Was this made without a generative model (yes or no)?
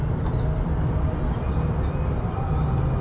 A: yes